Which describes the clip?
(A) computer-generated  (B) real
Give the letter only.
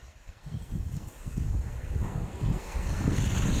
A